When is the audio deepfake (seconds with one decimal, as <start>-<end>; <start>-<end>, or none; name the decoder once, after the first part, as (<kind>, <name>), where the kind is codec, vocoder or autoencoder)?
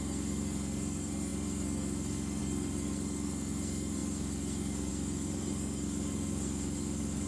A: 0.0-7.3 (codec, SNAC)